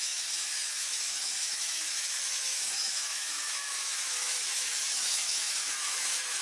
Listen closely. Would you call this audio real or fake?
fake